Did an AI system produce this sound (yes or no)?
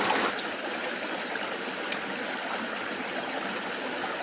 no